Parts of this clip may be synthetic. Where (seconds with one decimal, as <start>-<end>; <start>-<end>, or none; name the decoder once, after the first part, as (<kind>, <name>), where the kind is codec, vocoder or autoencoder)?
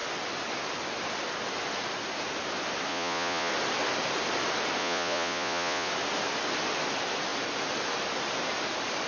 2.9-3.5 (vocoder, Vocos); 4.8-5.9